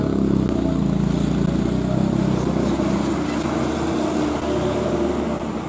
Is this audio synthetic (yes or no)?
no